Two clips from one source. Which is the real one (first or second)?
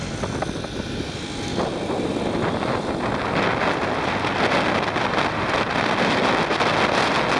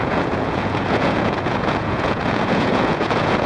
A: first